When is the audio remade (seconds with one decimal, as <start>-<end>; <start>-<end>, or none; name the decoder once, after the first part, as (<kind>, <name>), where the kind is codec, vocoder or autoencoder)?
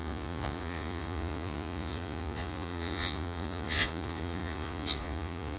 0.0-5.6 (vocoder, Vocos)